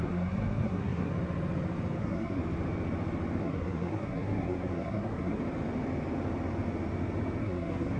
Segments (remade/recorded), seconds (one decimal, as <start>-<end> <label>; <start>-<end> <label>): 0.0-1.1 remade; 1.1-2.0 recorded; 2.0-2.4 remade; 2.4-3.4 recorded; 3.4-5.4 remade; 5.4-7.4 recorded; 7.4-8.0 remade